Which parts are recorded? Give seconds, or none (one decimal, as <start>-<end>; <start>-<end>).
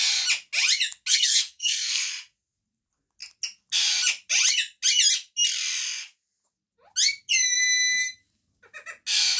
0.0-1.1; 2.1-9.4